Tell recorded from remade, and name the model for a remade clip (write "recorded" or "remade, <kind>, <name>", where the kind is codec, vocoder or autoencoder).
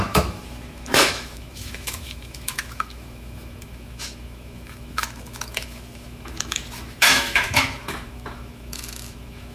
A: remade, autoencoder, DAC-VAE